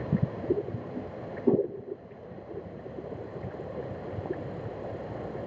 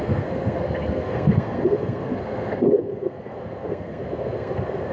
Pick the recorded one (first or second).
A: first